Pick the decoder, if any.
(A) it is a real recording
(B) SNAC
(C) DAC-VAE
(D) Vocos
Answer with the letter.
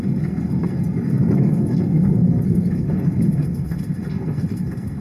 B